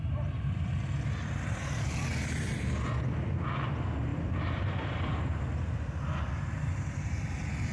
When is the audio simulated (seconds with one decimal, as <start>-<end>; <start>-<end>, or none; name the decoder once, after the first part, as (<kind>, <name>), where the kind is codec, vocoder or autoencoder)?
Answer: 4.1-5.4 (vocoder, BigVGAN v2)